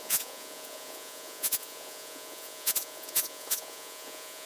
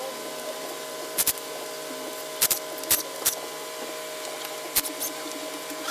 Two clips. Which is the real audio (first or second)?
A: second